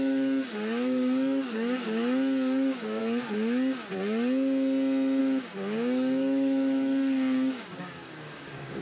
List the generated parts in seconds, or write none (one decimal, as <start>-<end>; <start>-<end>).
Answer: 0.0-3.0; 5.2-8.8